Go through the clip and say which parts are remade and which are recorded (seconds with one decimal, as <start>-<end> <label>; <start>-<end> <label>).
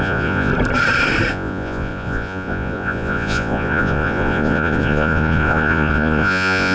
0.0-0.5 remade; 0.5-1.3 recorded; 1.3-6.7 remade